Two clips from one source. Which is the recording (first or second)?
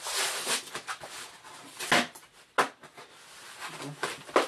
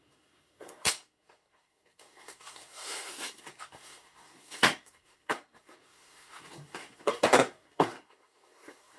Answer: first